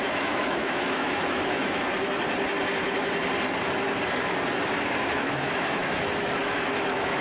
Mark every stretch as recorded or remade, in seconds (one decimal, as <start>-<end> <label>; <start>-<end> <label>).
0.0-1.9 remade; 1.9-5.1 recorded; 5.1-7.2 remade